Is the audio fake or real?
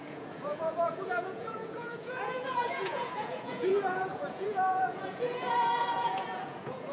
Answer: fake